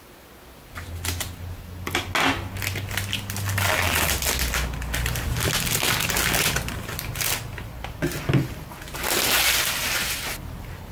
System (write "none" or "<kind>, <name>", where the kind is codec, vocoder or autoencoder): none